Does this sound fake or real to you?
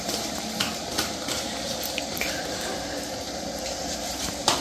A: fake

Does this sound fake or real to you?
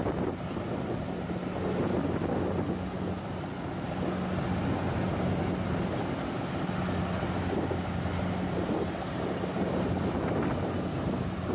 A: real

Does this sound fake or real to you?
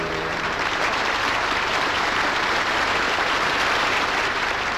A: fake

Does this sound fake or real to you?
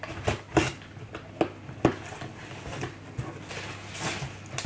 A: real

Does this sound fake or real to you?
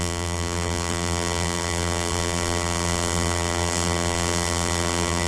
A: fake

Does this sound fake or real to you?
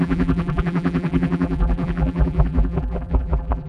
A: fake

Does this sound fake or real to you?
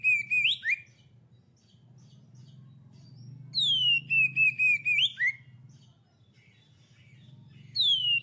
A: real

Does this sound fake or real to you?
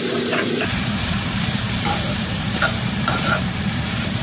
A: fake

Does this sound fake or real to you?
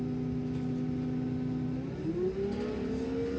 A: real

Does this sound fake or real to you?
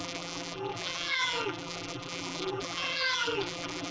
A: fake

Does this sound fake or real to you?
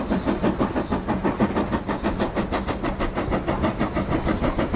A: real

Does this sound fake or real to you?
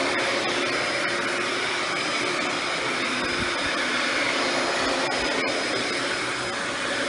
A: real